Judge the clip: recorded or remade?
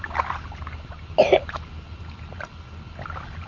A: recorded